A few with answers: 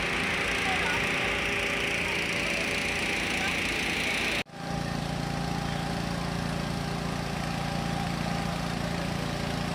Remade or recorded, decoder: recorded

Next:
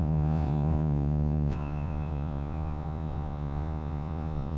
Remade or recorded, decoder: remade, vocoder, Vocos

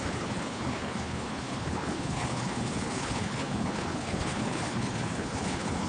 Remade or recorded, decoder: remade, codec, HILCodec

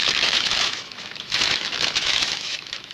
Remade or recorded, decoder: remade, autoencoder, DAC-VAE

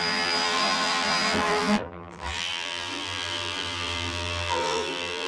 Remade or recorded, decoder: remade, vocoder, BigVGAN v2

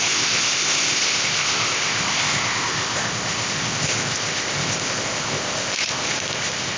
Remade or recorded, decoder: remade, codec, ZipCodec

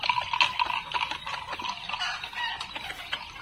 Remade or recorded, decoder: recorded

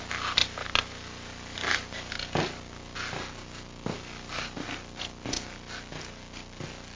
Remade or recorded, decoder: recorded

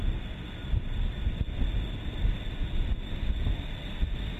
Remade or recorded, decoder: recorded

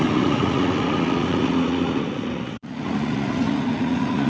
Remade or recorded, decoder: remade, vocoder, Vocos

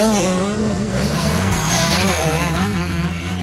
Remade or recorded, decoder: remade, codec, SNAC